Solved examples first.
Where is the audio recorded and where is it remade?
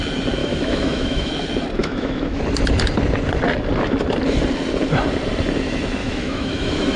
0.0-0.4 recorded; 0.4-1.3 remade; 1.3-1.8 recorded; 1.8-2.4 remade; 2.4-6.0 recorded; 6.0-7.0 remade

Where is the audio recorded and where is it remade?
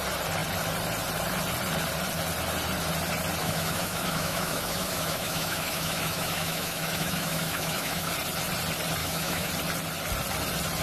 0.0-3.4 recorded; 3.4-8.1 remade; 8.1-9.0 recorded; 9.0-9.5 remade; 9.5-10.8 recorded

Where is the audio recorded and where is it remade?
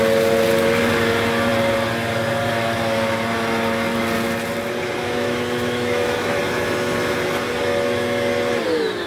0.0-5.0 recorded; 5.0-6.4 remade; 6.4-9.1 recorded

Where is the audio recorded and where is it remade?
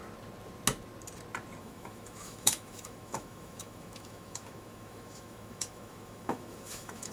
0.0-1.6 recorded; 1.6-7.1 remade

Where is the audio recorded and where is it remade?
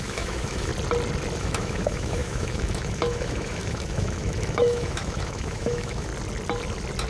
0.0-0.7 remade; 0.7-1.4 recorded; 1.4-6.1 remade; 6.1-7.1 recorded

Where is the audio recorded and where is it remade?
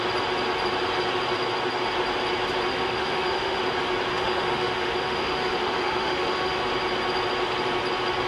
0.0-2.7 recorded; 2.7-3.6 remade; 3.6-4.1 recorded; 4.1-6.6 remade; 6.6-8.3 recorded